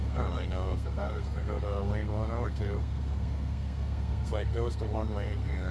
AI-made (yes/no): yes